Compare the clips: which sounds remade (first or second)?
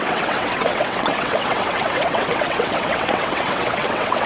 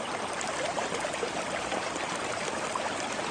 first